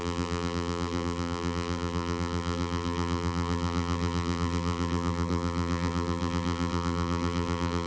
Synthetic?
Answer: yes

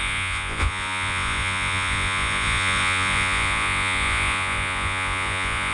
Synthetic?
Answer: yes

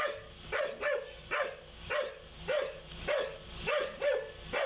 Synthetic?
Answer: no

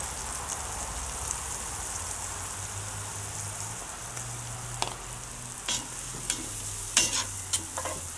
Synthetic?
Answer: no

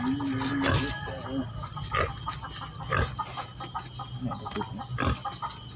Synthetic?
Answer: no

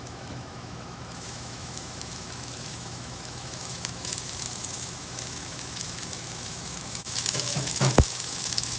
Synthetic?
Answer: yes